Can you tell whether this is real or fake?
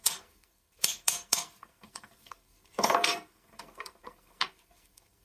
fake